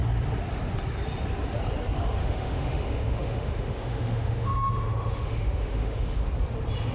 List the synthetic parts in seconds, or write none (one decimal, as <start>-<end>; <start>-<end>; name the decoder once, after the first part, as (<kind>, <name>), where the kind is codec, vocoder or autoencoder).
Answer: 2.2-6.3 (autoencoder, DAC-VAE)